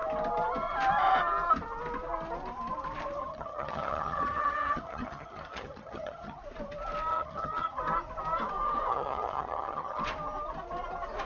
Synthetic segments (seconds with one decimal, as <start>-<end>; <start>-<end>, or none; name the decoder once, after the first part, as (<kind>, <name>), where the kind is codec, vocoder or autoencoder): 3.2-6.4 (vocoder, HiFi-GAN); 7.1-7.8; 8.9-10.0